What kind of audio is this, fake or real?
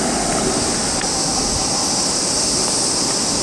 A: real